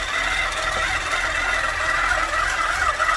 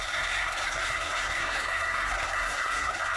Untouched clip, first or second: first